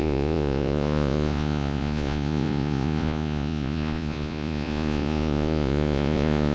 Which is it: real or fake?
fake